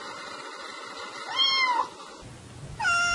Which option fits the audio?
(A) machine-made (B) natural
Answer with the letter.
B